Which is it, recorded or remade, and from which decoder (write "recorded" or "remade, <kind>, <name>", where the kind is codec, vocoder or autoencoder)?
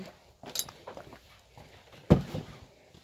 recorded